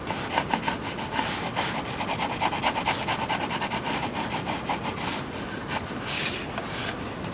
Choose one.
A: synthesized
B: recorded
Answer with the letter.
B